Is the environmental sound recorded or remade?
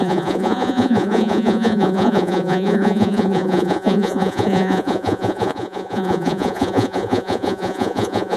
remade